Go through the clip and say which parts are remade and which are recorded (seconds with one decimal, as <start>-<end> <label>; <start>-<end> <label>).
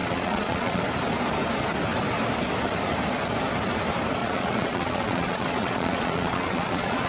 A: 0.0-0.8 remade; 0.8-4.2 recorded; 4.2-7.1 remade